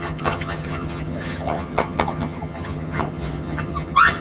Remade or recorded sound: remade